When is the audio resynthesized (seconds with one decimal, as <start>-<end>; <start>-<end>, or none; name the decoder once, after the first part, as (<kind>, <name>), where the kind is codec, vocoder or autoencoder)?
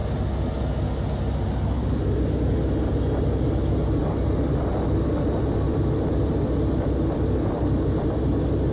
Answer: none